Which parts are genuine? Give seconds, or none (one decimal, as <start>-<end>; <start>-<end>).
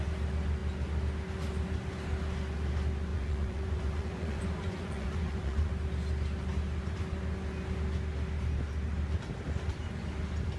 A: 0.0-3.1; 5.7-10.6